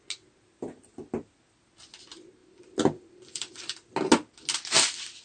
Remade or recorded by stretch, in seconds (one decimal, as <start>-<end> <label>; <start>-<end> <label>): 0.0-2.4 recorded; 2.4-3.9 remade; 3.9-5.2 recorded